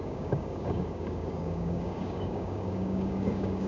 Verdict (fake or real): fake